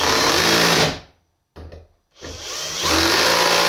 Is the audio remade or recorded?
recorded